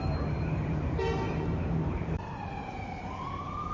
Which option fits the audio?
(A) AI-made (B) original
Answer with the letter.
A